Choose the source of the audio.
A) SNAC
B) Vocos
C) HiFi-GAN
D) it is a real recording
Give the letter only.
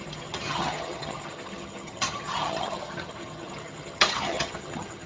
C